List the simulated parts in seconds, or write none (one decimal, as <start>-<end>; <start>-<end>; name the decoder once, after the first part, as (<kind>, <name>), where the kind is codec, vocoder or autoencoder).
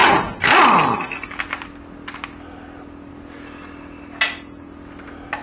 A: none